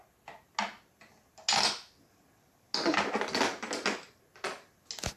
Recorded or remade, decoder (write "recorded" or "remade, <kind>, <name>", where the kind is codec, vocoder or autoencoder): recorded